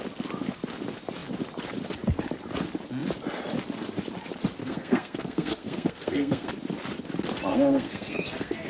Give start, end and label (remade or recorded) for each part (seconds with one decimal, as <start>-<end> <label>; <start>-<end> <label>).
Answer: 0.0-4.6 recorded; 4.6-6.5 remade; 6.5-7.5 recorded; 7.5-8.7 remade